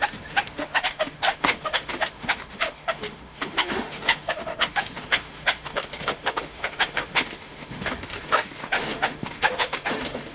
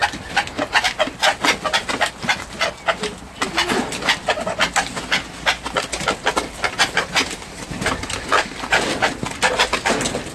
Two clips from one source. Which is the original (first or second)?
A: second